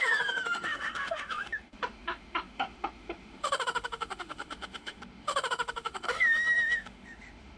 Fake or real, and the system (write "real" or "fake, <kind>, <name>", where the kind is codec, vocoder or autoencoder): fake, autoencoder, DAC-VAE